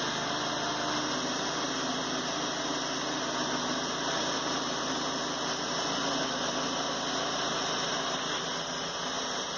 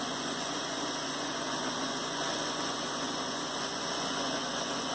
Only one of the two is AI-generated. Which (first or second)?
second